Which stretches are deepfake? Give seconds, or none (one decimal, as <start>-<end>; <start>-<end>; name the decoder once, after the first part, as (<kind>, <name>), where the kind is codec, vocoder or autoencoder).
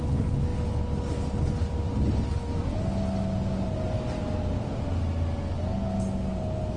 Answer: none